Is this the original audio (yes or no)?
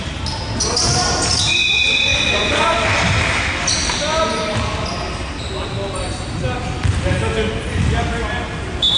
yes